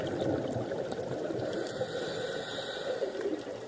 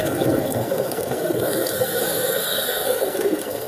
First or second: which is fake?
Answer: second